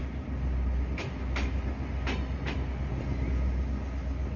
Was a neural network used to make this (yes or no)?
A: no